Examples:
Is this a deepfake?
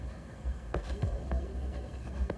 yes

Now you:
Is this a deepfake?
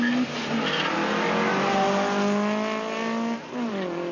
no